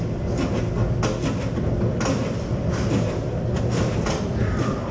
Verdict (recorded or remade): recorded